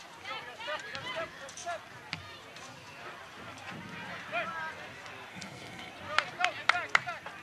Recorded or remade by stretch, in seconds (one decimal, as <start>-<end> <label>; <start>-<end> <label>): 0.0-5.3 recorded; 5.3-5.9 remade; 5.9-7.4 recorded